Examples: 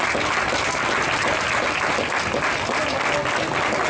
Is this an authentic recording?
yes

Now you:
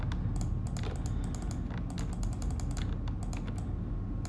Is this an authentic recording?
yes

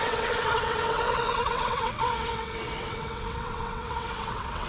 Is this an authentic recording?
no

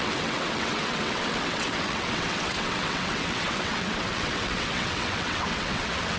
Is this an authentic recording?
no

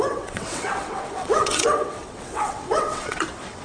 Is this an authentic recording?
no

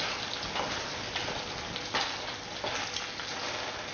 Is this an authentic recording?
yes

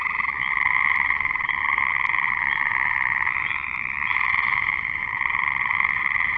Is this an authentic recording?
no